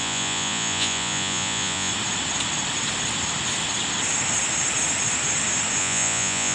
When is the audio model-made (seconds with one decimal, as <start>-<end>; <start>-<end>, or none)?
0.0-1.9; 5.8-6.5

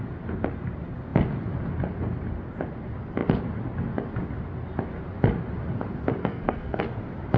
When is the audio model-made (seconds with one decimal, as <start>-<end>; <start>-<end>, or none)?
6.2-6.8

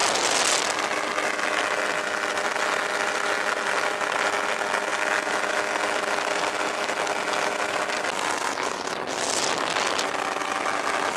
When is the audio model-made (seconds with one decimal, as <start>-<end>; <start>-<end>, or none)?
none

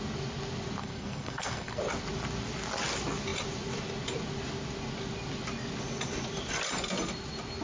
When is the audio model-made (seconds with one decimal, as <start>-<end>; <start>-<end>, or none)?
0.8-1.8

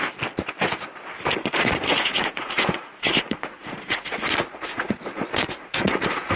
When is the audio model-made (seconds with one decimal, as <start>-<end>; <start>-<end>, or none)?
1.6-6.4

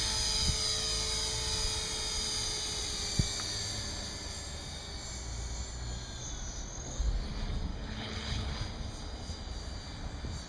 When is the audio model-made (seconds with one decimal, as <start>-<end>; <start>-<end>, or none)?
7.7-8.5

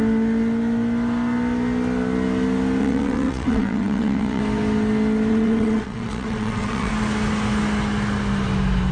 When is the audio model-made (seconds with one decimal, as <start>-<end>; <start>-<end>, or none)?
2.8-4.4; 5.3-6.9